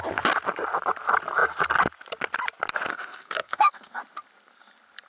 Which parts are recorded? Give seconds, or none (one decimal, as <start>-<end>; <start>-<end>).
0.0-2.9; 4.0-5.1